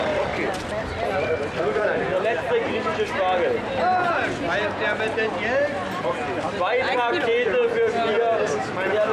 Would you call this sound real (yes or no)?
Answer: yes